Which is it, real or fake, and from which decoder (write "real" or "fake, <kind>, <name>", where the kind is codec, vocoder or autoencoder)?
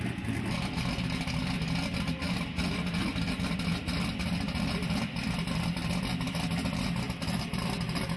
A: real